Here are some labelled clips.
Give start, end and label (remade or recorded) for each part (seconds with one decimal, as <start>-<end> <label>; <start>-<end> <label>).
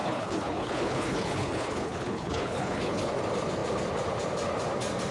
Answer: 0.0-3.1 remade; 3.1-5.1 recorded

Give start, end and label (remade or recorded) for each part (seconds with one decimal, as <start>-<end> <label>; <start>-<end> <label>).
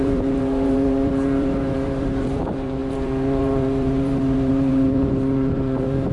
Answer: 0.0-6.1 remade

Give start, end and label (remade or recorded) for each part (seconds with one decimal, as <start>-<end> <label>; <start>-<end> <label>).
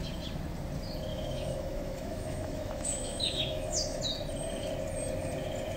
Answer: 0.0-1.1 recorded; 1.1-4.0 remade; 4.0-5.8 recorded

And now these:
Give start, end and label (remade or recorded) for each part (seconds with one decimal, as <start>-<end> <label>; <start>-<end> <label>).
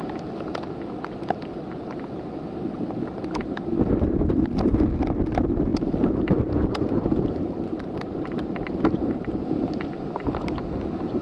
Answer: 0.0-5.7 recorded; 5.7-9.3 remade; 9.3-11.2 recorded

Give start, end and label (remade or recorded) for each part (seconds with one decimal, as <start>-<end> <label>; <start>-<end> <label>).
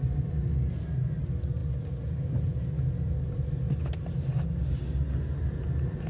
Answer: 0.0-6.1 recorded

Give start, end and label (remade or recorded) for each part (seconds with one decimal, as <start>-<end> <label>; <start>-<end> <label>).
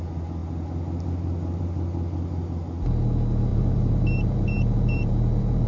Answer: 0.0-3.5 recorded; 3.5-5.7 remade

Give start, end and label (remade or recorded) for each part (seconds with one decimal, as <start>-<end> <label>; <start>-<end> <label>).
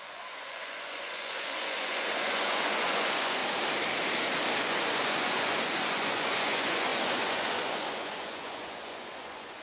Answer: 0.0-3.4 remade; 3.4-4.6 recorded; 4.6-9.6 remade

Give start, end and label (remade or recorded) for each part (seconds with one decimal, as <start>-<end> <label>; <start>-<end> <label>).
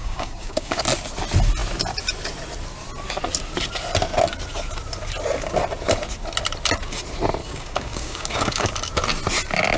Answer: 0.0-0.8 remade; 0.8-7.4 recorded; 7.4-8.7 remade; 8.7-9.8 recorded